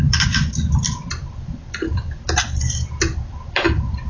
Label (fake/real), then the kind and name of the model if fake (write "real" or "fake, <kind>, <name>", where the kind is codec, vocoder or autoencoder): fake, vocoder, BigVGAN v2